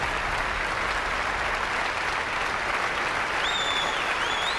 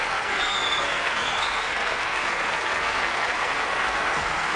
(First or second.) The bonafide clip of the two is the first